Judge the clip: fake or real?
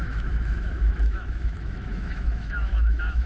fake